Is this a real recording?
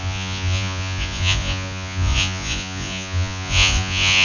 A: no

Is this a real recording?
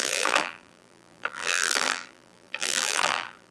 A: no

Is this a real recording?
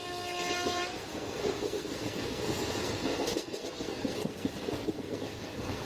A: no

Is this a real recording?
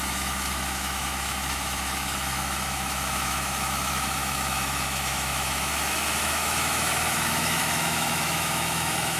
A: no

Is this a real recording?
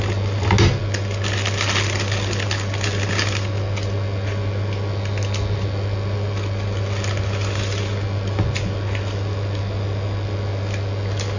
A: yes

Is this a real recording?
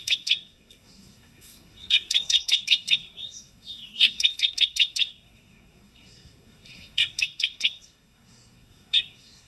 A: no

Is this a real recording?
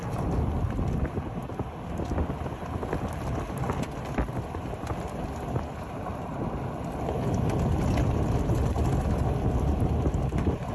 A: yes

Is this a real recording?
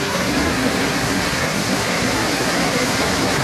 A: no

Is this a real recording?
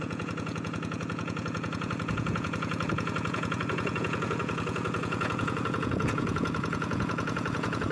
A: no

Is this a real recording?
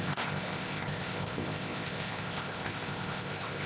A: no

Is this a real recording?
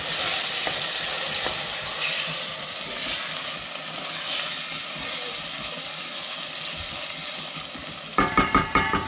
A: yes